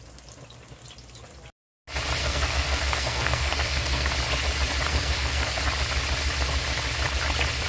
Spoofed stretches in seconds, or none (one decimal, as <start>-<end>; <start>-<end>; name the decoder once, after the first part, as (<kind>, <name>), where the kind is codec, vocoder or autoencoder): 2.2-4.1 (codec, SNAC); 4.9-5.6